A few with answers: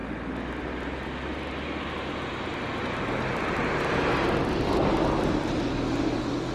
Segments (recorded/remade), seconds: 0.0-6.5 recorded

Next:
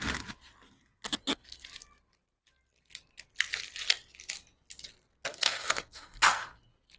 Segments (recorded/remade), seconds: 0.0-5.3 recorded; 5.3-6.6 remade; 6.6-7.0 recorded

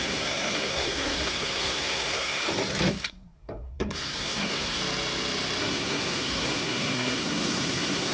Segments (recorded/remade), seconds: 0.0-2.4 remade; 2.4-2.9 recorded; 2.9-4.8 remade; 4.8-5.6 recorded; 5.6-8.1 remade

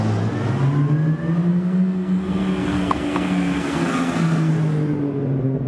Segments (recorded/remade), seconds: 0.0-1.5 recorded; 1.5-4.5 remade; 4.5-5.7 recorded

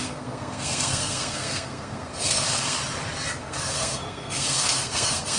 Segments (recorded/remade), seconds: 0.0-2.8 remade; 2.8-3.4 recorded; 3.4-5.4 remade

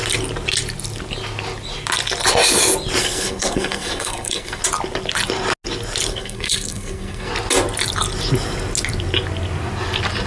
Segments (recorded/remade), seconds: 0.0-3.0 recorded; 3.0-4.6 remade; 4.6-6.1 recorded; 6.1-7.3 remade; 7.3-10.3 recorded

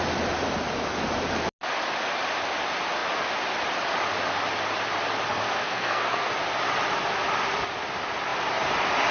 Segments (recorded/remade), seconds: 0.0-5.3 recorded; 5.3-6.3 remade; 6.3-9.1 recorded

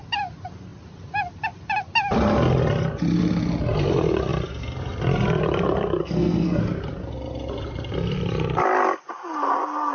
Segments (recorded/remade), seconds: 0.0-6.0 recorded; 6.0-6.6 remade; 6.6-9.9 recorded